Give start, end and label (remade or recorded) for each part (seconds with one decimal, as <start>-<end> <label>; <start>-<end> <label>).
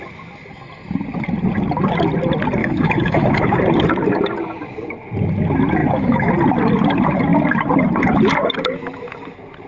0.0-2.6 recorded; 2.6-3.6 remade; 3.6-5.8 recorded; 5.8-6.3 remade; 6.3-9.7 recorded